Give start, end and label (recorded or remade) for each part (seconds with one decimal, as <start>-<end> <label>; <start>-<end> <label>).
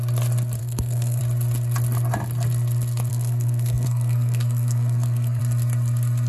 0.0-0.6 recorded; 0.6-1.2 remade; 1.2-3.1 recorded; 3.1-5.4 remade; 5.4-6.3 recorded